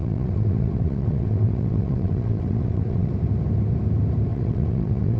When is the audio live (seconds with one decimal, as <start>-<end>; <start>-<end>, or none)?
3.1-4.3